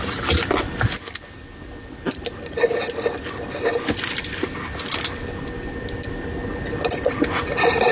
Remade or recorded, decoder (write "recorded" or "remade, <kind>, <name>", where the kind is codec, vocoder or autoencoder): recorded